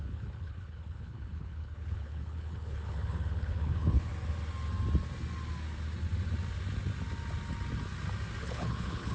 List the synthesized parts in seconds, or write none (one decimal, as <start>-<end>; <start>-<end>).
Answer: 0.0-4.1; 8.4-9.1